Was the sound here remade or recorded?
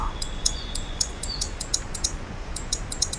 remade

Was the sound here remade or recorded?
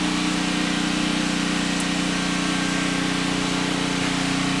recorded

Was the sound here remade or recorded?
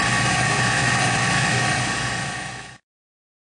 recorded